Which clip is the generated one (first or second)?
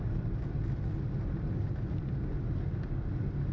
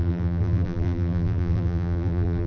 second